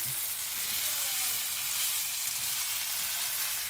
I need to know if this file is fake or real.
real